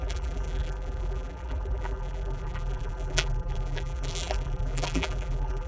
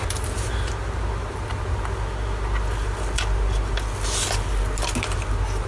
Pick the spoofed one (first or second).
first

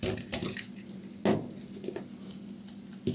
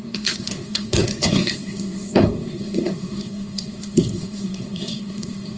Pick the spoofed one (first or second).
second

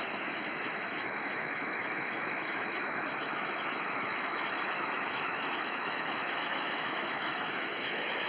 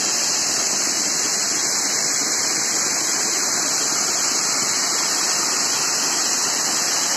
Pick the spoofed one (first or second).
first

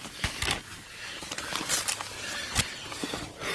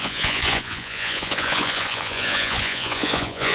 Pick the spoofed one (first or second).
second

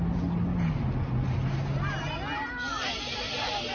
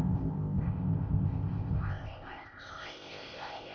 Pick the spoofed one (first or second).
second